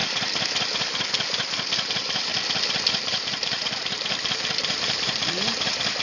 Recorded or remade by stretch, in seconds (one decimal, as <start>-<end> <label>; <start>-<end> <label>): 0.0-1.9 recorded; 1.9-2.3 remade; 2.3-2.9 recorded; 2.9-6.0 remade